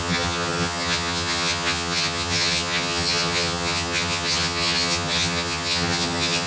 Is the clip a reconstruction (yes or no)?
yes